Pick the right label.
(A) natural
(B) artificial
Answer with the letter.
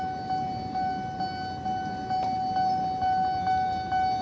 A